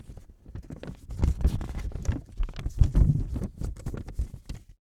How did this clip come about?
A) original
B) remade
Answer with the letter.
A